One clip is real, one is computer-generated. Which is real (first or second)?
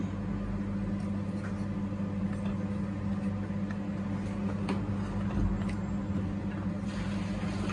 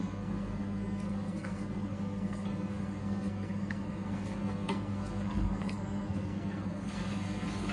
first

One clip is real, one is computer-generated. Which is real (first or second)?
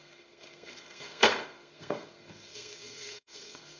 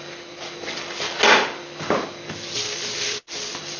second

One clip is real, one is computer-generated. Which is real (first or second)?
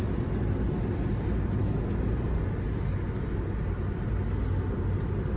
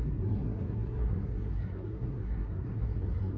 first